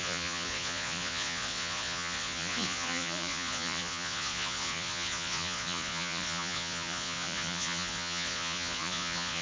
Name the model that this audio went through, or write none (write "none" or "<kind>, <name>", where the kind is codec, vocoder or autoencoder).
vocoder, Vocos